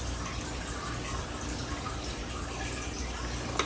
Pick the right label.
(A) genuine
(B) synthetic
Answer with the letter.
A